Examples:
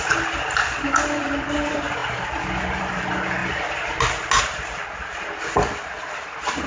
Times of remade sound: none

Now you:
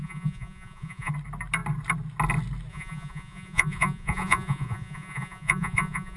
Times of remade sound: 0.0-1.1 (vocoder, Vocos); 2.7-6.2

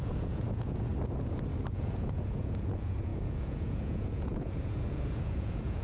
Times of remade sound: 0.0-0.9 (vocoder, Vocos); 1.7-5.8

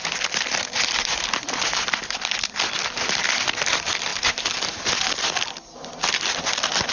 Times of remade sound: none